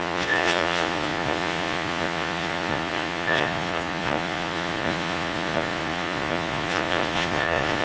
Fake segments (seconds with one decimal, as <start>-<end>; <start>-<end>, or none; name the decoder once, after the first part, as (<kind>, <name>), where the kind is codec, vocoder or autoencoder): 0.0-7.8 (vocoder, Vocos)